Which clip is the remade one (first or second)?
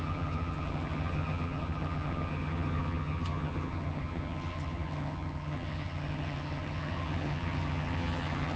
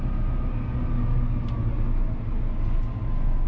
first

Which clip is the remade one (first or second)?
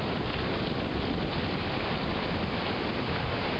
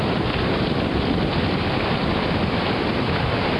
second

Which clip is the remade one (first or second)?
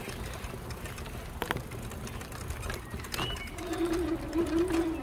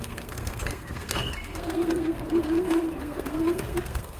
second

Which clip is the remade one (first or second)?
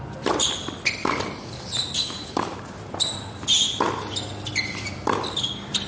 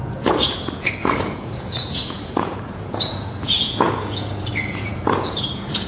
second